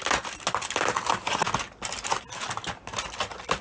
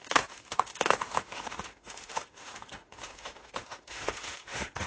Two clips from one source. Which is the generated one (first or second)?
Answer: second